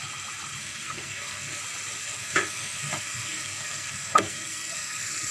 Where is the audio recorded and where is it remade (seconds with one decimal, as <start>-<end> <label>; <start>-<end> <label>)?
0.0-0.6 recorded; 0.6-1.6 remade; 1.6-2.0 recorded; 2.0-5.3 remade